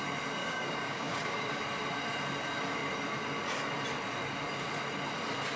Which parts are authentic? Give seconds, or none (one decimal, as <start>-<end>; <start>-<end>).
0.0-0.4; 1.6-5.6